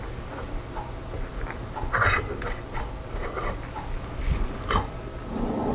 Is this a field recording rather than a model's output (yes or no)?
yes